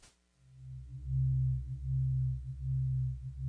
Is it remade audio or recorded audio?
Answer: recorded